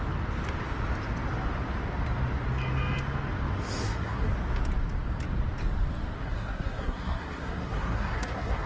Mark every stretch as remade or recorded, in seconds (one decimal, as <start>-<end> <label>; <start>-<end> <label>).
0.0-3.8 recorded; 3.8-4.3 remade; 4.3-6.2 recorded; 6.2-8.7 remade

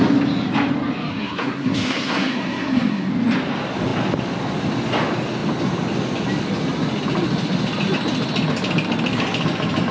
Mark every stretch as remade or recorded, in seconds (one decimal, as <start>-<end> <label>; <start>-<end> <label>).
0.0-1.1 recorded; 1.1-3.1 remade; 3.1-9.9 recorded

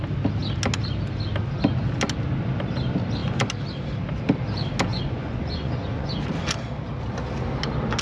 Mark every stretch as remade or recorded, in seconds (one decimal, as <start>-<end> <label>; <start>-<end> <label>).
0.0-4.9 recorded; 4.9-6.1 remade; 6.1-8.0 recorded

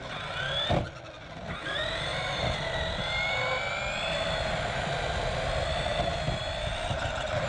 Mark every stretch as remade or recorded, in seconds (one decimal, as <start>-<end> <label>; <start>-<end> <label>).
0.0-7.5 recorded

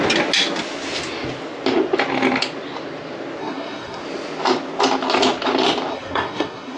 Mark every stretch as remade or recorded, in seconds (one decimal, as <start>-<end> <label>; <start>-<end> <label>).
0.0-3.4 recorded; 3.4-4.0 remade; 4.0-5.9 recorded; 5.9-6.8 remade

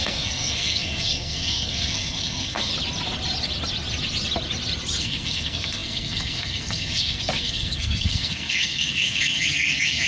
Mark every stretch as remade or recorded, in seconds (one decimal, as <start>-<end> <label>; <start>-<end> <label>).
0.0-2.7 remade; 2.7-5.0 recorded; 5.0-10.1 remade

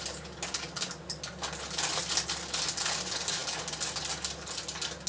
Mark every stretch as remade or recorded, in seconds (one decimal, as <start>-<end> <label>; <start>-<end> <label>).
0.0-5.1 recorded